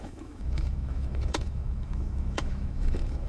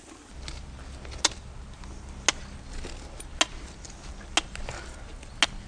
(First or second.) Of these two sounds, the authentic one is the second